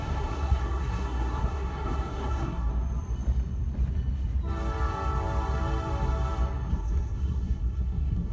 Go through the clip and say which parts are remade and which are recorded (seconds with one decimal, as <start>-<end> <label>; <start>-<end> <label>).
0.0-2.7 remade; 2.7-6.7 recorded; 6.7-8.3 remade